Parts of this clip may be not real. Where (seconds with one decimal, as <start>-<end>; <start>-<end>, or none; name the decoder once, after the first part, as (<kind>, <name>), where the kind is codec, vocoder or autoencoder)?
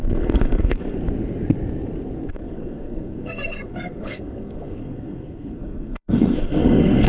0.0-1.0 (codec, SNAC); 2.3-7.1